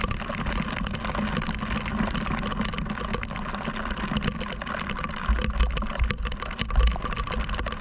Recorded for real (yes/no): yes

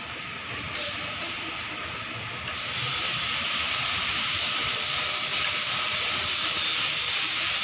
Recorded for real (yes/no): yes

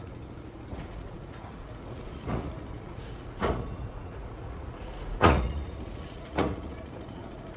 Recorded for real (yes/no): no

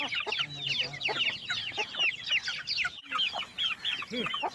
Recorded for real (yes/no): yes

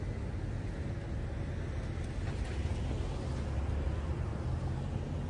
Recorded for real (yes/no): yes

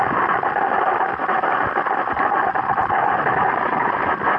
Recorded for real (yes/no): yes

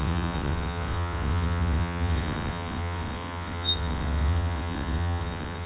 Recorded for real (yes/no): no